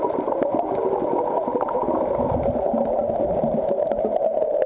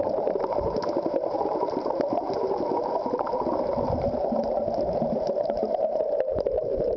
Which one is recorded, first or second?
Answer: first